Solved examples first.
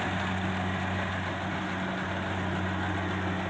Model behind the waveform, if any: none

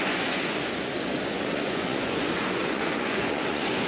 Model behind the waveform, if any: vocoder, Vocos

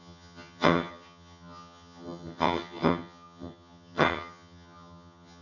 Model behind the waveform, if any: vocoder, HiFi-GAN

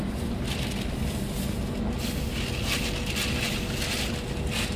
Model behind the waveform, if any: none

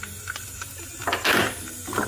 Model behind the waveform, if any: none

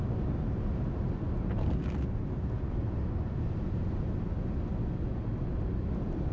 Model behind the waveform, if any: none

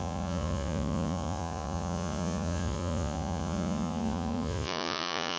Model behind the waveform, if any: vocoder, Vocos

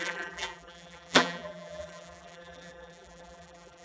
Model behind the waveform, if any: vocoder, BigVGAN v2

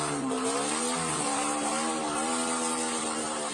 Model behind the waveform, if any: vocoder, BigVGAN v2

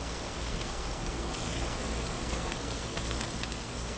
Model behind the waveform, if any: codec, SNAC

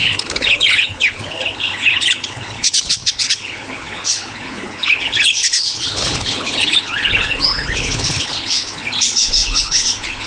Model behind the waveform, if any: codec, HILCodec